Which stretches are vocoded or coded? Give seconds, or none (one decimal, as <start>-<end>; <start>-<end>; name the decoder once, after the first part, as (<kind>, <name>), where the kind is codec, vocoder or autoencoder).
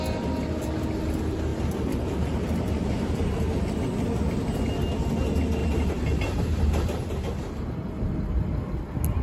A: 1.5-3.7 (vocoder, BigVGAN v2); 5.6-7.5